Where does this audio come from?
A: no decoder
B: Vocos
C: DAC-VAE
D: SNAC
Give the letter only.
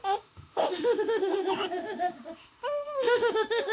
C